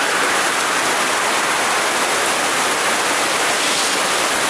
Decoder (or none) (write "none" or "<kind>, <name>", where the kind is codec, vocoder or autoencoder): none